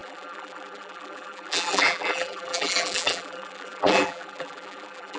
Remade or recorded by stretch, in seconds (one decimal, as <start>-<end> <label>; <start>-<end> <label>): 0.0-5.2 remade